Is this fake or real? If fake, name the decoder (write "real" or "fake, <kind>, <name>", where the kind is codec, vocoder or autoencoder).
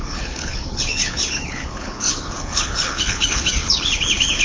fake, codec, HILCodec